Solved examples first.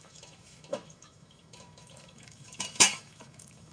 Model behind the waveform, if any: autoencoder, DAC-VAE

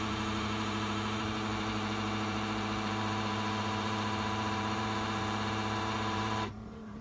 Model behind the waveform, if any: vocoder, BigVGAN v2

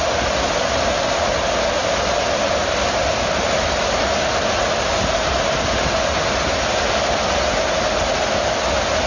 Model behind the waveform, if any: none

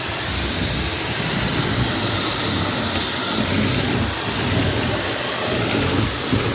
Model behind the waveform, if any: none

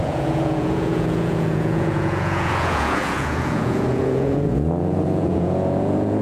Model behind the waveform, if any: vocoder, Vocos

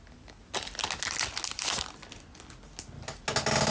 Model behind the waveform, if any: none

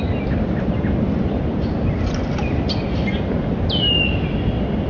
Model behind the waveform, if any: none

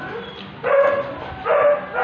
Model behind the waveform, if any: none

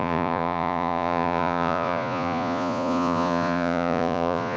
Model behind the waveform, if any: vocoder, Vocos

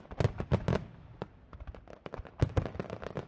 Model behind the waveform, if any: none